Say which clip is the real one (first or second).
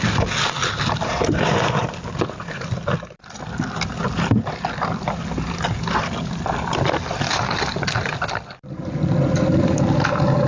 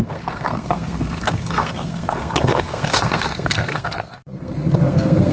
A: first